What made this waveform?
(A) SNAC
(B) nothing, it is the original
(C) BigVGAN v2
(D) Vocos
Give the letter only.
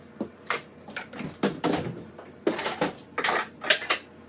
B